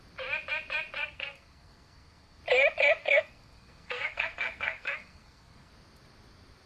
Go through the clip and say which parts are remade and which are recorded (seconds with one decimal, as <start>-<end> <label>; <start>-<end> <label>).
0.0-1.0 recorded; 1.0-2.4 remade; 2.4-3.0 recorded; 3.0-5.7 remade; 5.7-6.7 recorded